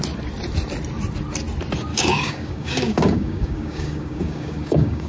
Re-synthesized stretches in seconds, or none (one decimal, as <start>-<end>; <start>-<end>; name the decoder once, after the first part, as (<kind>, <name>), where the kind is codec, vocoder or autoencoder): 1.9-5.1 (codec, DAC)